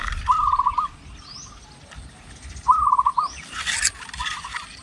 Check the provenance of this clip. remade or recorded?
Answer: recorded